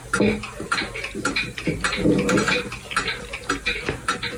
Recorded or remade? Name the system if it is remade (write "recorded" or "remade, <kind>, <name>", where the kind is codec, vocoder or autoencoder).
recorded